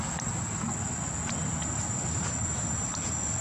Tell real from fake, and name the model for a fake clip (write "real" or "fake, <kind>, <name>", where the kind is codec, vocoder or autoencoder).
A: real